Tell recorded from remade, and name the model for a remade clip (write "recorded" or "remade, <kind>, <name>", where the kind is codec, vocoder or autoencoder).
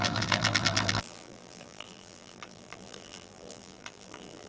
remade, vocoder, BigVGAN v2